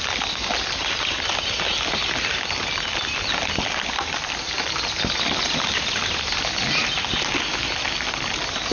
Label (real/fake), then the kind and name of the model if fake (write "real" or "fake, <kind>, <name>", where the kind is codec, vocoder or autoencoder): real